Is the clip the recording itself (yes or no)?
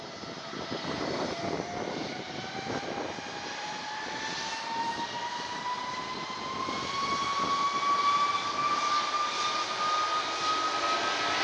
yes